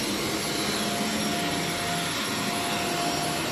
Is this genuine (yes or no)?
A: yes